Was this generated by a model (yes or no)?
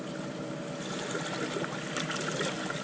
no